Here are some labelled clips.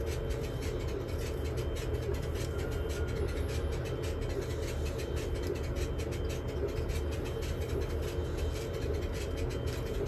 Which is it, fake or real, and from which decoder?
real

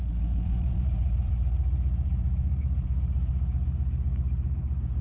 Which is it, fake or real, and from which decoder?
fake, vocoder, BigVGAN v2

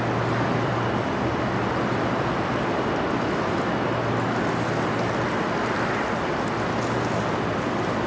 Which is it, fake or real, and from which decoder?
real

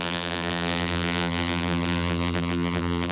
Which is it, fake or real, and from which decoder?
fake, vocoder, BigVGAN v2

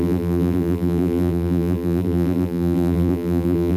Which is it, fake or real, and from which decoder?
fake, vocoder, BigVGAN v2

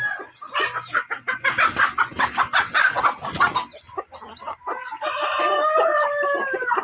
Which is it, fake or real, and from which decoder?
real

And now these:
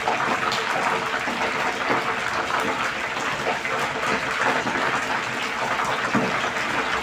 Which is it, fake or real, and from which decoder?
real